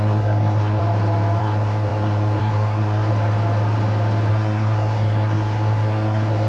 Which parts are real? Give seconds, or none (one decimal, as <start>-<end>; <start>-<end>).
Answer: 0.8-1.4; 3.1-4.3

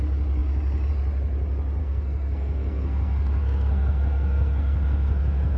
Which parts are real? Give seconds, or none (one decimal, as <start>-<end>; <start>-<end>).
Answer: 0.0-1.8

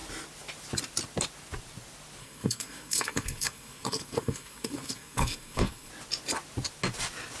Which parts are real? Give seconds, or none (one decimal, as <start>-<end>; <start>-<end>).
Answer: 0.0-2.2; 5.9-7.4